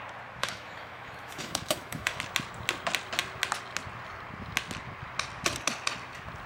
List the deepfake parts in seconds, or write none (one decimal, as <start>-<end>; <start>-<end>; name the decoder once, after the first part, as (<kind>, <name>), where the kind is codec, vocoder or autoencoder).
0.4-2.2 (autoencoder, DAC-VAE)